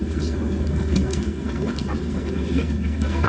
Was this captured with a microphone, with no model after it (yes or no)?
no